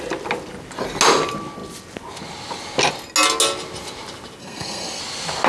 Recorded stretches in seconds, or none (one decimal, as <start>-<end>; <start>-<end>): 0.0-4.4; 5.0-5.5